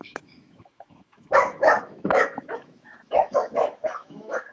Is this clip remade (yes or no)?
yes